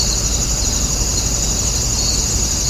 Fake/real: real